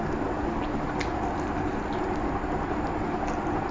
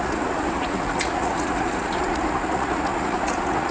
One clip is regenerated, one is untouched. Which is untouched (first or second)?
first